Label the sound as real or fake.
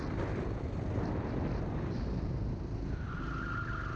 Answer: real